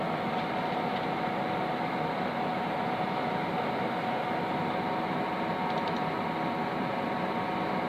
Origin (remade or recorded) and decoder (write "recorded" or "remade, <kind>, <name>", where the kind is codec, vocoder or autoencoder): recorded